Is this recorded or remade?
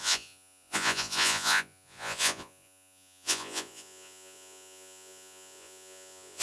remade